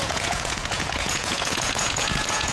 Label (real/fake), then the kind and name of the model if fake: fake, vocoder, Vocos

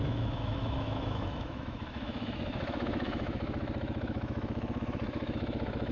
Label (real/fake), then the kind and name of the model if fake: fake, autoencoder, DAC-VAE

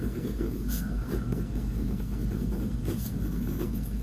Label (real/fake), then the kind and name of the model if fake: fake, codec, SNAC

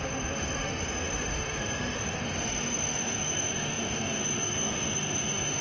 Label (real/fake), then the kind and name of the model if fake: fake, autoencoder, DAC-VAE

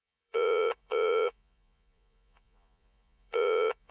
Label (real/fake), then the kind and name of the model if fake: fake, vocoder, Vocos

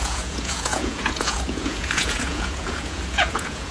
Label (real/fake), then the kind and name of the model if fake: fake, vocoder, Vocos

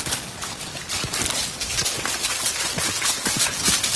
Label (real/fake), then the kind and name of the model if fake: real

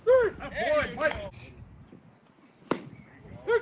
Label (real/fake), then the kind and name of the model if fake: real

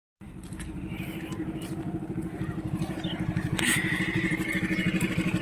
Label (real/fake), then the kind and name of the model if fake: fake, vocoder, BigVGAN v2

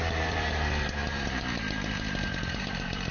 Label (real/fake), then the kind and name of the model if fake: fake, vocoder, BigVGAN v2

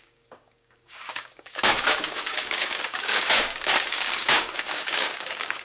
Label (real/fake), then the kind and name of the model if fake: fake, codec, DAC